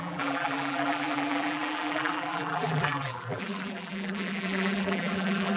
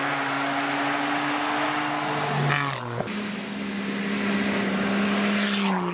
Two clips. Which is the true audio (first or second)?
second